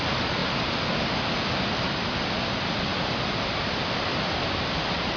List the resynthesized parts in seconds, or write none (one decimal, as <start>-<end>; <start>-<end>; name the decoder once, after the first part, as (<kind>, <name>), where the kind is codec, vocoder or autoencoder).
none